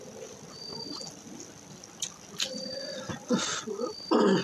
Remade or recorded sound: recorded